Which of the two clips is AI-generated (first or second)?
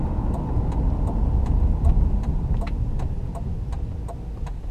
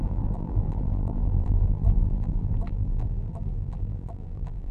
second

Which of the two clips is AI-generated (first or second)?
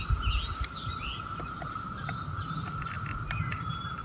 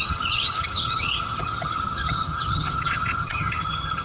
second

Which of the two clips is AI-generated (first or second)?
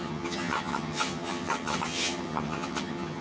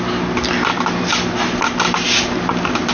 first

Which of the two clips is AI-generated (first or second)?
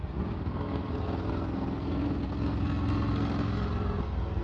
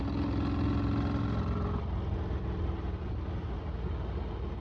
first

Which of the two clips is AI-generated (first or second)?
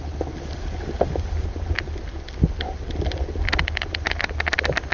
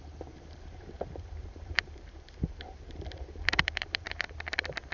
second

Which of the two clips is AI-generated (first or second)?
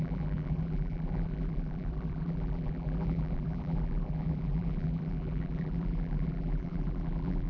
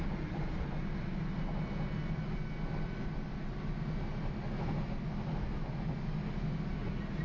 first